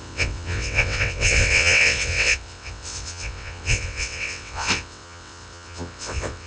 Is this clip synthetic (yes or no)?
yes